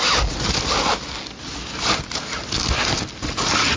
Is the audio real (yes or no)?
yes